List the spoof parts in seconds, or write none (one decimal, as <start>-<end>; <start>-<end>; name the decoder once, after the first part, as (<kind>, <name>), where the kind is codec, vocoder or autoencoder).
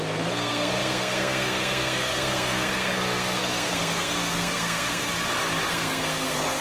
0.0-5.0 (codec, SNAC); 5.7-6.6